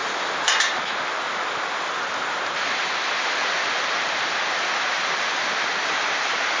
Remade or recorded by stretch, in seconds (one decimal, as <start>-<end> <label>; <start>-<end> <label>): 0.0-6.6 recorded